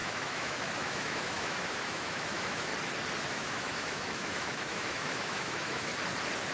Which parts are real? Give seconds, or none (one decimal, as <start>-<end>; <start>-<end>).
2.7-3.3; 5.9-6.5